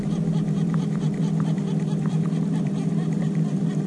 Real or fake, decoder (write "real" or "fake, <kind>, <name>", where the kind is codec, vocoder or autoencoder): fake, vocoder, BigVGAN v2